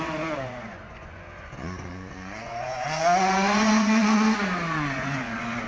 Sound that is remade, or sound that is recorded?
remade